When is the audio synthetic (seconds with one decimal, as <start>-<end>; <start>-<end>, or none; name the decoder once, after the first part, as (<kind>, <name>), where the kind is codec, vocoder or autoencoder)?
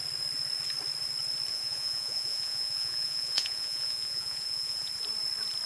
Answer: 1.5-4.9 (vocoder, Vocos)